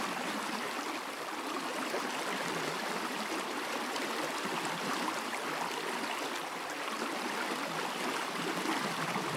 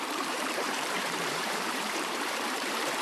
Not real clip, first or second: second